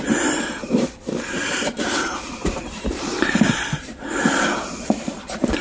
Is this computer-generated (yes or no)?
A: yes